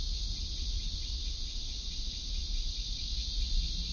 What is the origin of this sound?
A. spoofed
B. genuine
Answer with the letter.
B